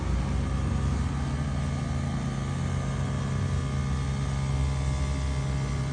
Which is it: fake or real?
real